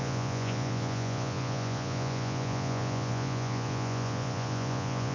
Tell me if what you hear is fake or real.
fake